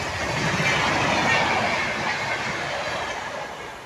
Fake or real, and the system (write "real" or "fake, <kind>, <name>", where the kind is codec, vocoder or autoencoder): real